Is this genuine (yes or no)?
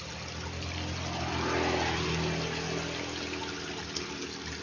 yes